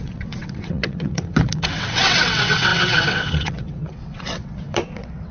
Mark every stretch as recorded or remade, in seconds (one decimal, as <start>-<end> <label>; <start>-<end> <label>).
0.0-5.3 remade